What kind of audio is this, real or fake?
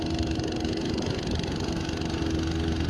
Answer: real